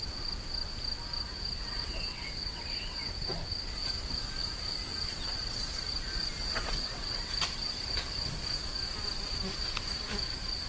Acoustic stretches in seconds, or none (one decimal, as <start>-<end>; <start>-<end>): 0.0-1.6; 3.1-6.4; 7.3-10.7